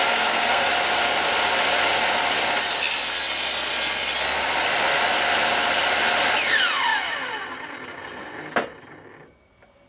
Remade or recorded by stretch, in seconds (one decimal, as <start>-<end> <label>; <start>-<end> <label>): 0.0-0.7 remade; 0.7-9.9 recorded